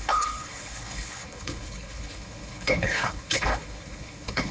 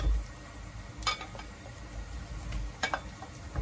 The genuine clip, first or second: second